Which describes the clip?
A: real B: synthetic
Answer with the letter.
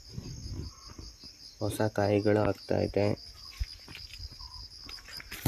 A